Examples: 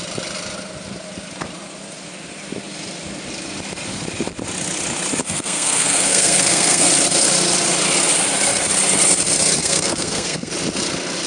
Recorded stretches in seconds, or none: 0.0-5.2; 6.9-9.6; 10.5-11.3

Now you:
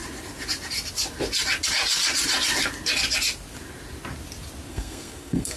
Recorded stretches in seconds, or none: 0.0-4.7

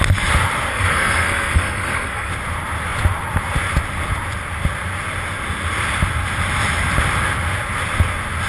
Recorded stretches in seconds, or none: 0.0-0.7; 2.3-8.5

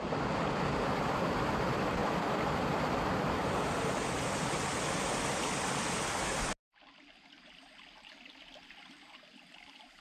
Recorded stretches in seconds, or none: 0.0-10.0

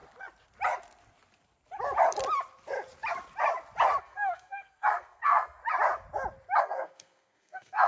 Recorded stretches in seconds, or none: 0.0-4.0; 5.6-6.6